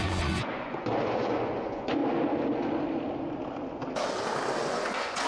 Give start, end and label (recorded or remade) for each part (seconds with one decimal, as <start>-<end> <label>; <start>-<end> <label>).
0.0-2.0 remade; 2.0-4.7 recorded; 4.7-5.3 remade